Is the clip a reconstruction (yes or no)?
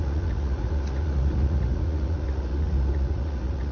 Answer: yes